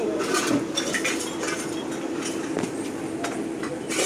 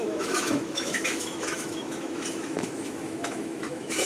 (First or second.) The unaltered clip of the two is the first